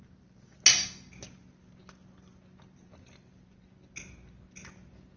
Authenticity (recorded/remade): recorded